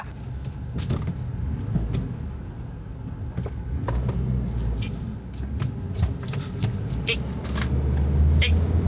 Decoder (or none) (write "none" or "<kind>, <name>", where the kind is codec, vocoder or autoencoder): none